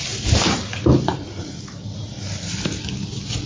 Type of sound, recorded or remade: recorded